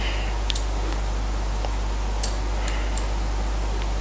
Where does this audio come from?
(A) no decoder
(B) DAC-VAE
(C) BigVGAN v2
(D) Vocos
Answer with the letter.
A